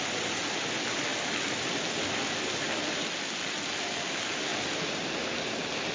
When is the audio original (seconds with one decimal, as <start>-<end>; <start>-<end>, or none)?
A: 0.0-5.9